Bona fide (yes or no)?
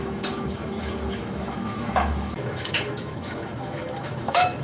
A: no